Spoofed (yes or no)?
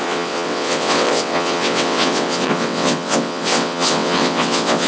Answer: yes